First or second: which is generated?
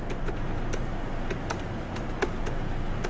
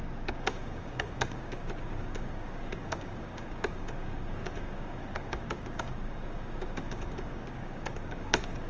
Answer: second